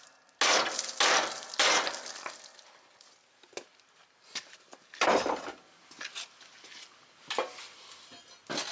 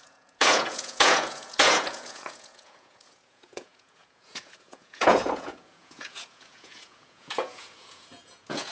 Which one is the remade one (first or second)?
second